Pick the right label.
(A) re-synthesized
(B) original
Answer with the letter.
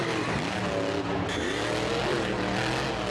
B